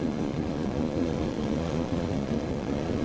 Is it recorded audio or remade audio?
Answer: remade